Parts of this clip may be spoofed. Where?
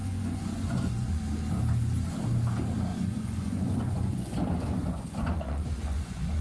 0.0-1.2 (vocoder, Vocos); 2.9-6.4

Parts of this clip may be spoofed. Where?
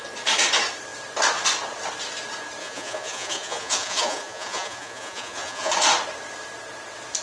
2.6-5.7 (vocoder, Vocos)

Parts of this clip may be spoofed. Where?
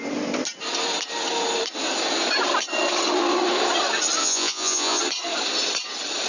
4.2-5.0 (vocoder, Vocos)